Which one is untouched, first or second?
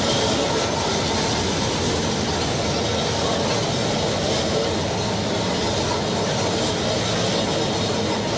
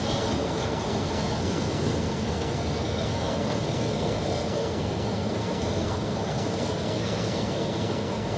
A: first